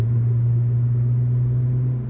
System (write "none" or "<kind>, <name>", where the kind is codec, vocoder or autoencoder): none